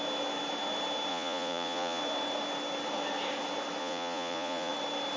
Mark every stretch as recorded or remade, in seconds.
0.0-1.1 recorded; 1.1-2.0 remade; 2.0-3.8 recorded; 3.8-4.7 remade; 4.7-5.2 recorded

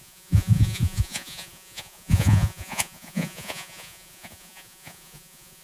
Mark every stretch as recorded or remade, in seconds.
0.0-5.6 remade

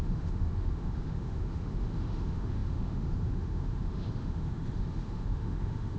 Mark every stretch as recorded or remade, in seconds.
0.0-6.0 remade